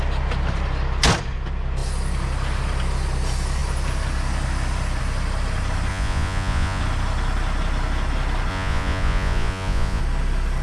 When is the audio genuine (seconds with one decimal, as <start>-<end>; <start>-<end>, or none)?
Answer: 0.0-5.9; 6.8-8.5; 10.0-10.6